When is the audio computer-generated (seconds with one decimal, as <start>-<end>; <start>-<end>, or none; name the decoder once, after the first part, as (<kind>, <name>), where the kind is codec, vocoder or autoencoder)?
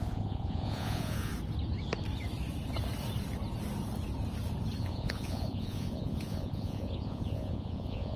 0.0-1.3 (vocoder, Vocos); 4.8-8.2